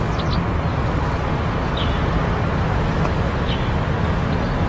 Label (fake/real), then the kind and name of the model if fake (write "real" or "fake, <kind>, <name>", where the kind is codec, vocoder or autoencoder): real